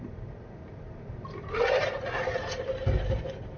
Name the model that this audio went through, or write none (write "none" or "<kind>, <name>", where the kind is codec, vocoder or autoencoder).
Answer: vocoder, BigVGAN v2